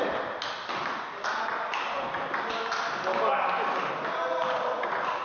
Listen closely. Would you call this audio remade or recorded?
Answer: recorded